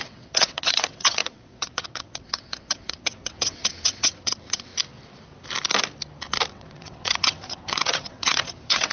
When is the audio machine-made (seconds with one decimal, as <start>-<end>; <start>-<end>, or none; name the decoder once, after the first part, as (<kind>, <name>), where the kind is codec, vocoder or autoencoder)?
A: 0.0-4.7 (vocoder, WaveNeXt); 6.5-8.9